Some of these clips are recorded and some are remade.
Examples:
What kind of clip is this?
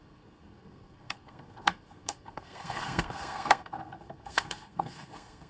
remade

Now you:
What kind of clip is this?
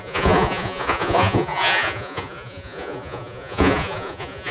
remade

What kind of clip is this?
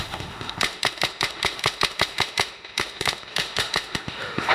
remade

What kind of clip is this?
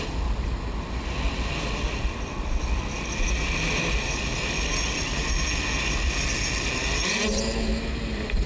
recorded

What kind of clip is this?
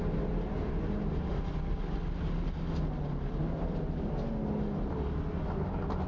recorded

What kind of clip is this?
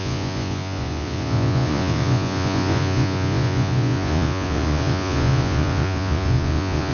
remade